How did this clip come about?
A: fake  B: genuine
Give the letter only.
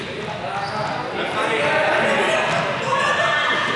B